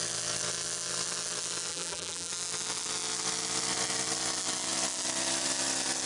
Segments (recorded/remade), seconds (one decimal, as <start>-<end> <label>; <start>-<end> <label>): 0.0-1.7 recorded; 1.7-2.3 remade; 2.3-6.1 recorded